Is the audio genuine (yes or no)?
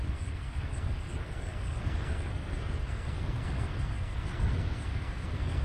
no